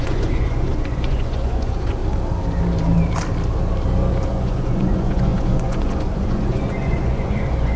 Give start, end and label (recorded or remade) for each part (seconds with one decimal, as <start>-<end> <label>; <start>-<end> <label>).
0.0-2.0 remade; 2.0-4.3 recorded; 4.3-7.8 remade